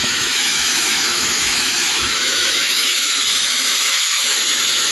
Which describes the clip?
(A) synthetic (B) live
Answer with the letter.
A